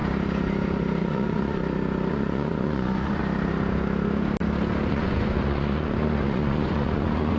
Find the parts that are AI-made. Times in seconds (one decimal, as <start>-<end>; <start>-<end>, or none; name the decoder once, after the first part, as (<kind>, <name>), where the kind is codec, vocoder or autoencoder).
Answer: 1.0-1.6 (vocoder, Vocos); 2.1-3.2; 4.9-7.4